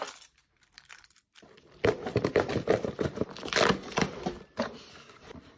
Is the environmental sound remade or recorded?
remade